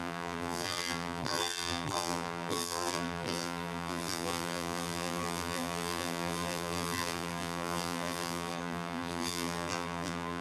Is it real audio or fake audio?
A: fake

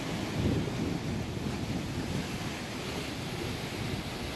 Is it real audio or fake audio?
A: real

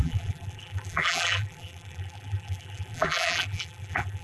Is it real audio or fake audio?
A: fake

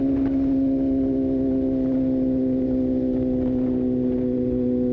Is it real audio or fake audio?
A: real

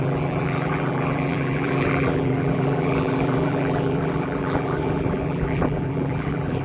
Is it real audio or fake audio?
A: fake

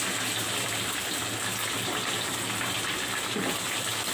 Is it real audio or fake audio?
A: real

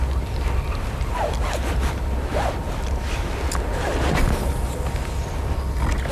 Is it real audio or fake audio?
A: real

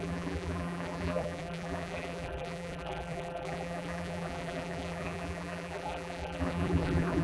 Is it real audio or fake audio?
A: fake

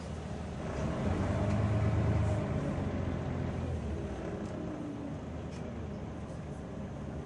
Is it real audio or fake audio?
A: real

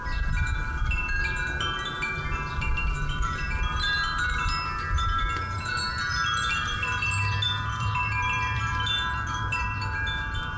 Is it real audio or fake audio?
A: fake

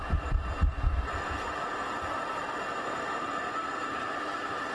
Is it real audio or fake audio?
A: fake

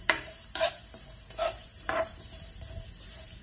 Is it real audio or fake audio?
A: fake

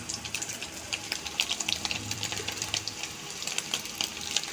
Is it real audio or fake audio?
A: fake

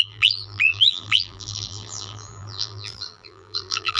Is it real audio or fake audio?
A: fake